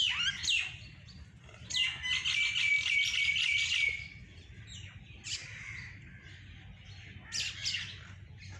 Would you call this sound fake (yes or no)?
no